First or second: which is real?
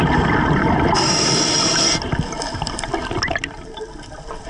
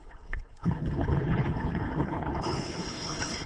first